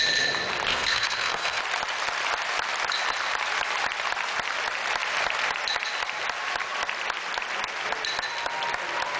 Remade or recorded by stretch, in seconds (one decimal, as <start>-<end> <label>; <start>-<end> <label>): 0.0-0.7 recorded; 0.7-1.6 remade; 1.6-9.2 recorded